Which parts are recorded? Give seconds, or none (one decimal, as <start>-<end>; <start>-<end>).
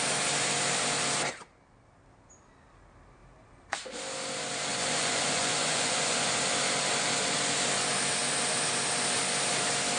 0.0-4.7; 6.3-10.0